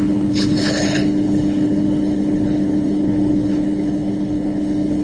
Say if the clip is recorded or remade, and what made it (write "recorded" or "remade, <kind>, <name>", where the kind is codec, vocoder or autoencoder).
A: remade, codec, HILCodec